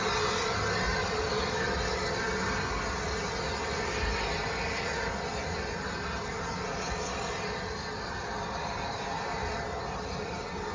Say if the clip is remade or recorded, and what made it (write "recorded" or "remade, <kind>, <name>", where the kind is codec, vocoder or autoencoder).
recorded